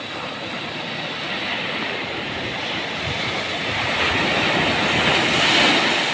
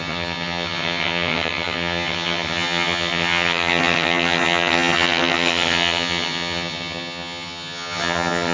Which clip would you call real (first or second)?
first